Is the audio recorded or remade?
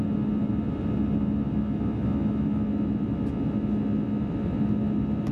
recorded